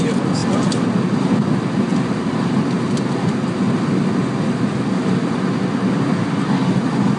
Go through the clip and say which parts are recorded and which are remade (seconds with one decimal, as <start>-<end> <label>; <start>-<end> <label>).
0.0-7.2 recorded